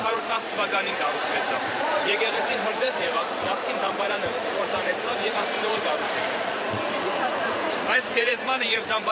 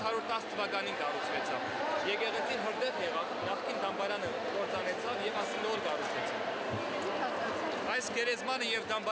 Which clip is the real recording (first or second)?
second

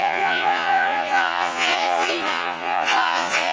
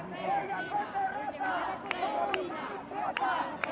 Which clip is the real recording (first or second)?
second